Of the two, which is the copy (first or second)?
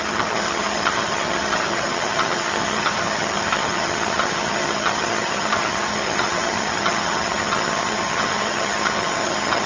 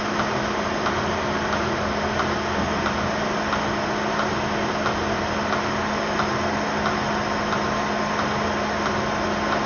first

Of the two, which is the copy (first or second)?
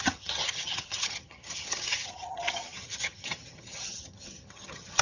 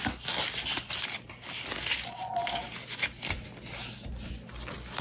first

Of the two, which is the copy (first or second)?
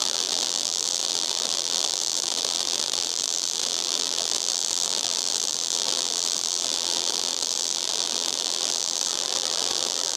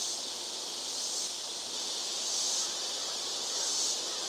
first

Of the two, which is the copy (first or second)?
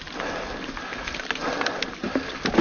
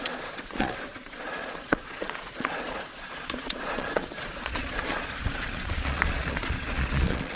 second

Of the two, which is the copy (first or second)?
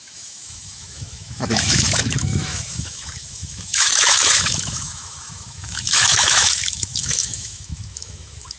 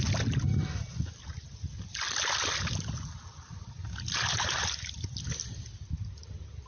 first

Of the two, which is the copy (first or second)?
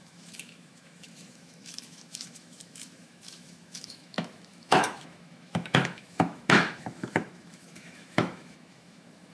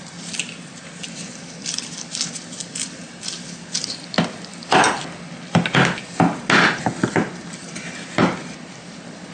first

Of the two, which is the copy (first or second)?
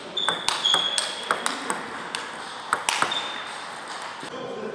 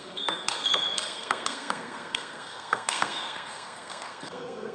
second